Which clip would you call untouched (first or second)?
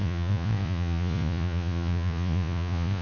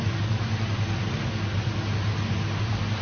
second